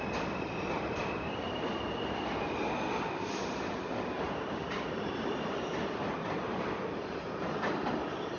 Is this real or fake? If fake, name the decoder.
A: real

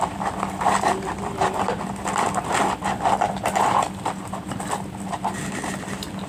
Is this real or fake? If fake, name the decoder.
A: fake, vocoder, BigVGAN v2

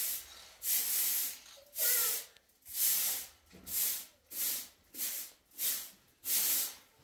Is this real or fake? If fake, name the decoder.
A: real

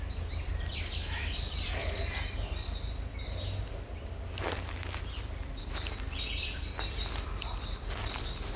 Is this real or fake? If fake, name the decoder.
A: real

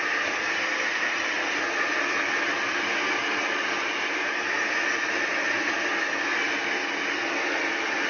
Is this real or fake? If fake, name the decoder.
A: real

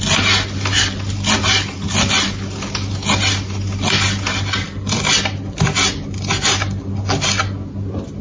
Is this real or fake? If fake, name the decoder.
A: real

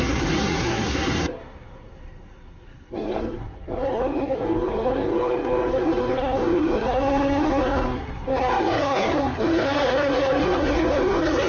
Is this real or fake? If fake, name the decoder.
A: fake, codec, SNAC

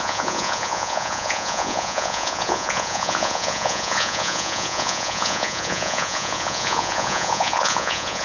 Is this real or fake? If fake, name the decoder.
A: fake, vocoder, Vocos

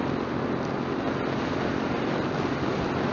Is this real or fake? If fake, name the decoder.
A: real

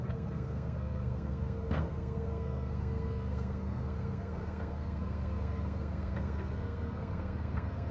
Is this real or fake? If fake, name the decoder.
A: fake, codec, SNAC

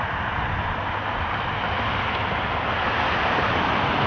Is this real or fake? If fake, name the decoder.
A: real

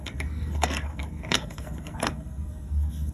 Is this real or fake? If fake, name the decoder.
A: fake, codec, SNAC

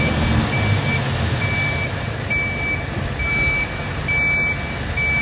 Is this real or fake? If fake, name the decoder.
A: real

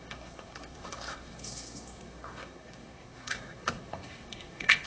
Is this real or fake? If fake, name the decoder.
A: fake, codec, SNAC